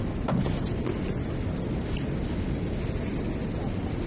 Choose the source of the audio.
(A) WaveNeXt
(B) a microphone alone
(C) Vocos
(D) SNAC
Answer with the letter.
B